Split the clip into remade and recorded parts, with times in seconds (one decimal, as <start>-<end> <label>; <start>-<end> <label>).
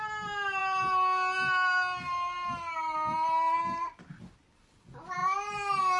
0.0-6.0 recorded